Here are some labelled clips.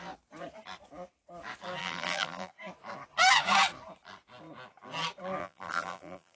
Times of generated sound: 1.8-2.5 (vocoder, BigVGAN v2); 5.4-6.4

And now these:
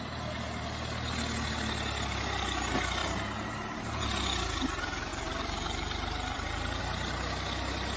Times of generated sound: 3.0-4.1 (vocoder, BigVGAN v2); 5.1-6.8

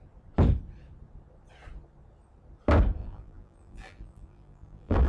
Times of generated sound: 3.0-5.1 (vocoder, BigVGAN v2)

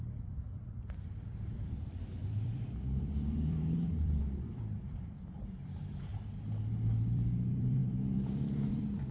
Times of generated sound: 0.0-6.1 (vocoder, BigVGAN v2); 6.7-9.1

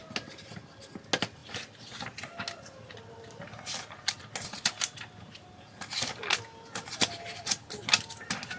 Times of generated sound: none

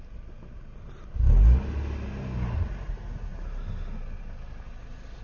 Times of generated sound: none

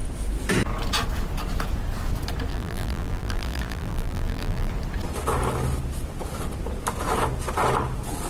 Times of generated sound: 2.5-4.7 (vocoder, BigVGAN v2)